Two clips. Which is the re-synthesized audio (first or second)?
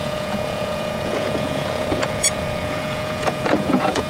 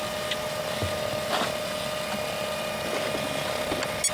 first